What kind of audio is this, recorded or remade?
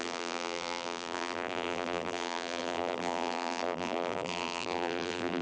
remade